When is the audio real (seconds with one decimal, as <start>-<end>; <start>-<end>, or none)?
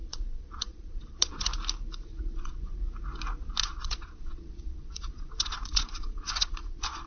1.5-2.2; 2.8-3.6